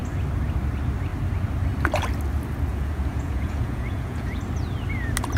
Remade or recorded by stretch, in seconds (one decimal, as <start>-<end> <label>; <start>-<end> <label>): 0.0-2.7 recorded; 2.7-4.4 remade; 4.4-5.4 recorded